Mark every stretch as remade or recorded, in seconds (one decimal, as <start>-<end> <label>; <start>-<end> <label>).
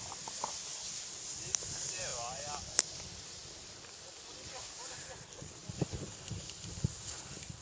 0.0-0.7 recorded; 0.7-1.7 remade; 1.7-2.1 recorded; 2.1-4.6 remade; 4.6-5.6 recorded; 5.6-6.7 remade; 6.7-7.6 recorded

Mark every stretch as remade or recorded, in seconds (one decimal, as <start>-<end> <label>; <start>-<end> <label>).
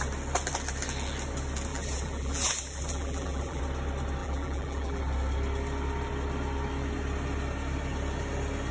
0.0-1.7 recorded; 1.7-3.6 remade; 3.6-4.2 recorded; 4.2-5.0 remade; 5.0-8.7 recorded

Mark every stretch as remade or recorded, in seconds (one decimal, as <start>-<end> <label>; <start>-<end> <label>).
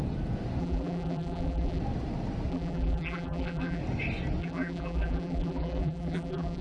0.0-0.6 recorded; 0.6-1.8 remade; 1.8-2.5 recorded; 2.5-3.8 remade; 3.8-4.4 recorded; 4.4-6.6 remade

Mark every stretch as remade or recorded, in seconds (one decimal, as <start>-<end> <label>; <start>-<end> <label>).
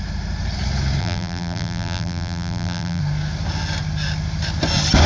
0.0-1.0 recorded; 1.0-3.0 remade; 3.0-5.1 recorded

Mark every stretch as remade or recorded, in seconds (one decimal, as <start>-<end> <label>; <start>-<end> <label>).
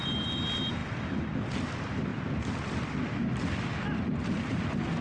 0.0-5.0 recorded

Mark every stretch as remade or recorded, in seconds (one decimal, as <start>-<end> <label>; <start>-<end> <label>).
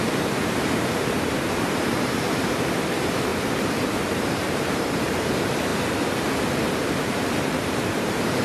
0.0-5.7 remade; 5.7-7.1 recorded; 7.1-8.4 remade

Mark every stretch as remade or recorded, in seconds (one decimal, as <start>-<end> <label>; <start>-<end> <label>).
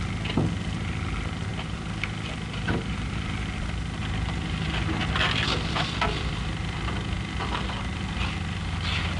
0.0-9.2 recorded